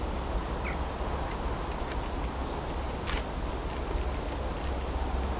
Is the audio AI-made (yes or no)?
no